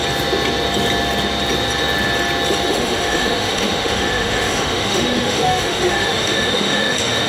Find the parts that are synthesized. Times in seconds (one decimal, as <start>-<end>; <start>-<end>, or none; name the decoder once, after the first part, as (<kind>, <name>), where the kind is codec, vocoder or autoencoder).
2.7-7.3 (autoencoder, DAC-VAE)